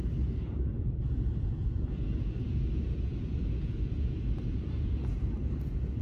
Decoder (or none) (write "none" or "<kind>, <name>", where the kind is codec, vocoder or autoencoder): vocoder, Vocos